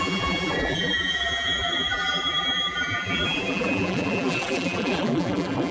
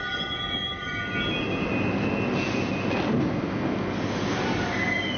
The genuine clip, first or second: second